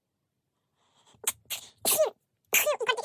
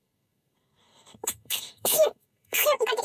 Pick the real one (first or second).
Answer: first